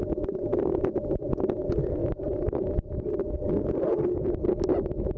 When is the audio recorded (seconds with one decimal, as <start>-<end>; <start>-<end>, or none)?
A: 0.0-0.5; 1.2-2.0; 3.0-4.4